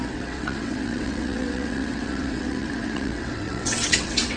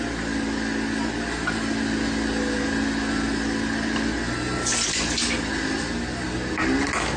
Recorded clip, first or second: second